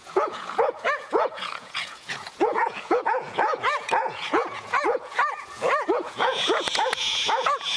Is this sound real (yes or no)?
no